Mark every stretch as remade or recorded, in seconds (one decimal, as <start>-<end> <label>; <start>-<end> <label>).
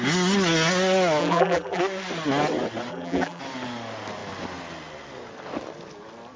0.0-1.2 recorded; 1.2-1.8 remade; 1.8-2.9 recorded; 2.9-3.4 remade; 3.4-6.4 recorded